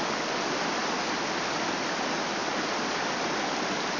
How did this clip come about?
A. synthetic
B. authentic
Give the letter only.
B